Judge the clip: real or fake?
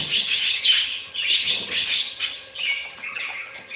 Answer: fake